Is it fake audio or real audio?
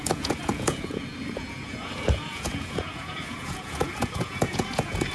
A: fake